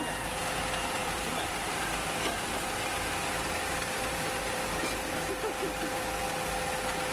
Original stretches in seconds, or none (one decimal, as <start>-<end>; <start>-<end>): 0.0-1.0; 5.3-7.1